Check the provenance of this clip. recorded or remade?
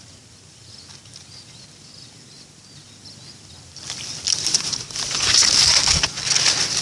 recorded